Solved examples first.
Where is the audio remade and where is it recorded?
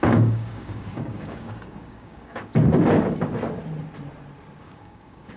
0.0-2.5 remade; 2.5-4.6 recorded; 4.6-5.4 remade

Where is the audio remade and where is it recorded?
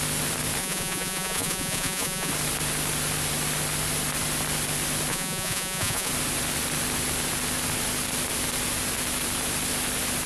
0.0-0.6 recorded; 0.6-2.3 remade; 2.3-5.1 recorded; 5.1-6.1 remade; 6.1-10.3 recorded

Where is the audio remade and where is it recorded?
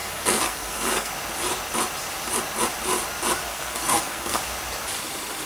0.0-1.1 remade; 1.1-3.5 recorded; 3.5-4.4 remade; 4.4-5.5 recorded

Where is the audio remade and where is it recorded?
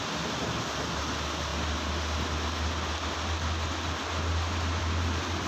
0.0-5.5 recorded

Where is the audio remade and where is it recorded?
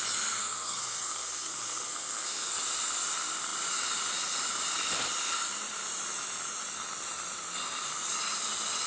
0.0-0.4 recorded; 0.4-2.5 remade; 2.5-8.9 recorded